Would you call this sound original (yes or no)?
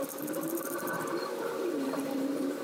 no